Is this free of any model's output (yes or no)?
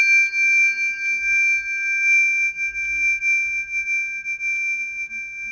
yes